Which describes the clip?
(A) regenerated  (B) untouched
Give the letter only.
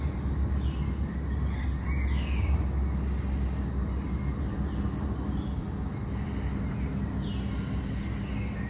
B